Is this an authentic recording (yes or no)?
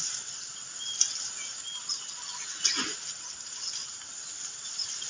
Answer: yes